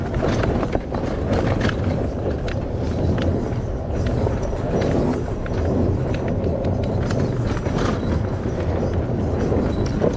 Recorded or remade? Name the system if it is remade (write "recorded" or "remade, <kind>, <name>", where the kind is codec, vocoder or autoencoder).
recorded